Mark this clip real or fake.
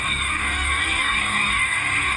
fake